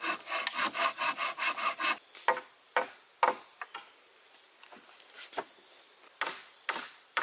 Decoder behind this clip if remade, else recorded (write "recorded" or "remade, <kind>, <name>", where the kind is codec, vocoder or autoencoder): recorded